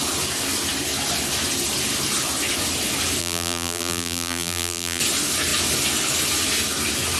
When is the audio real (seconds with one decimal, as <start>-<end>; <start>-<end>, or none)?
0.0-3.2; 5.0-7.2